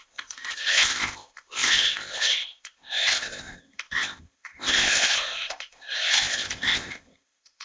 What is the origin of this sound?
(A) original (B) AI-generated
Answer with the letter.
B